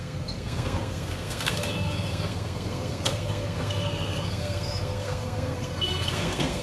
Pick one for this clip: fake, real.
fake